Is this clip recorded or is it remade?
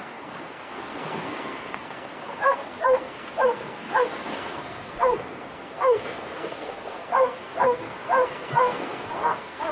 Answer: remade